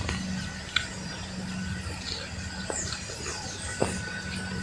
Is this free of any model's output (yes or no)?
yes